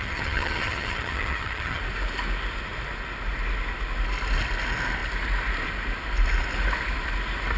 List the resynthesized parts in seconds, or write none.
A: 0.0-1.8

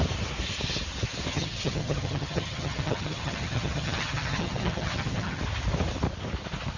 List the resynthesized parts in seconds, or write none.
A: 1.3-5.4

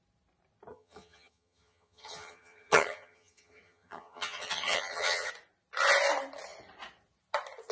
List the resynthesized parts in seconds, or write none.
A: 0.7-5.3

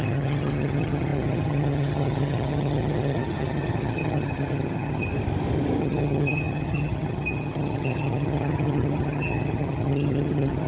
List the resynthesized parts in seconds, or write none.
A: 0.0-5.1; 5.8-10.7

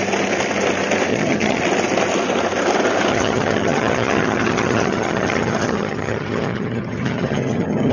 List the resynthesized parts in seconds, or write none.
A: 1.1-1.6; 3.1-7.9